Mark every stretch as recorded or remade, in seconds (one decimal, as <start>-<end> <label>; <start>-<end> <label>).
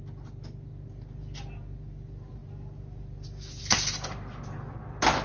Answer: 0.0-5.2 recorded